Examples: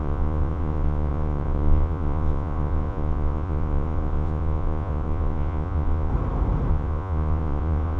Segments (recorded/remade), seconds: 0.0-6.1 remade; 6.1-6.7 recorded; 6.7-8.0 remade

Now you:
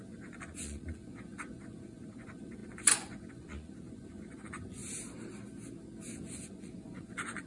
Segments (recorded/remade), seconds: 0.0-4.8 remade; 4.8-6.3 recorded; 6.3-7.5 remade

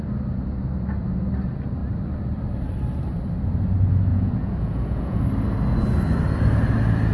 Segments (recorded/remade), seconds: 0.0-4.1 recorded; 4.1-5.2 remade; 5.2-7.1 recorded

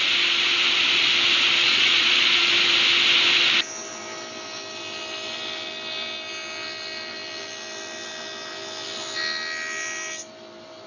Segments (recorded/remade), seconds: 0.0-1.6 recorded; 1.6-2.5 remade; 2.5-10.9 recorded

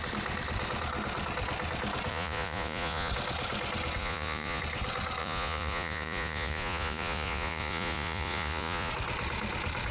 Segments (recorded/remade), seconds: 0.0-2.1 recorded; 2.1-3.1 remade; 3.1-4.0 recorded; 4.0-4.6 remade; 4.6-5.2 recorded; 5.2-8.9 remade; 8.9-9.9 recorded